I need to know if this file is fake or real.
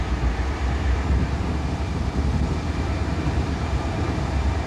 fake